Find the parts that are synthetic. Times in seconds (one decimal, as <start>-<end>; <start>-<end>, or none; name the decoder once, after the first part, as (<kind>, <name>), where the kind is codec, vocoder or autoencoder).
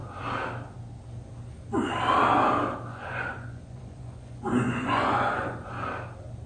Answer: 2.9-5.7 (vocoder, Vocos)